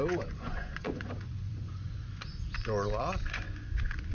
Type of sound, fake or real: fake